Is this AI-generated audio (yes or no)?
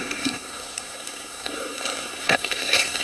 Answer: yes